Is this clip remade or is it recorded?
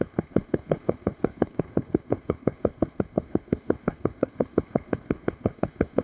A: remade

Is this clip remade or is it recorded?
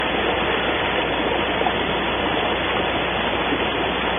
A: recorded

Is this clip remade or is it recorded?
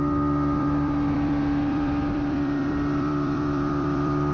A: remade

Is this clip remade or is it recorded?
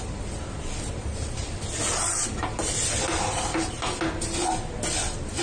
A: recorded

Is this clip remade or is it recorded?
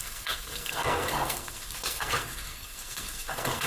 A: remade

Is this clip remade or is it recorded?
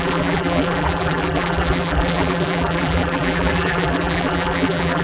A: remade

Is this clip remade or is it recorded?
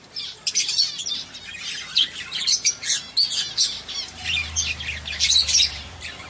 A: recorded